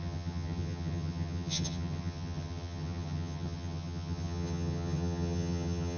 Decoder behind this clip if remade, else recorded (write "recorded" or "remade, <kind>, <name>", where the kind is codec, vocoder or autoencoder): remade, vocoder, HiFi-GAN